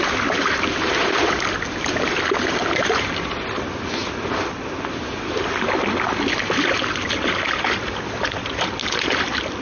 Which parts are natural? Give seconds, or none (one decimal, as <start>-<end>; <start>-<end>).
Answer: 0.0-9.6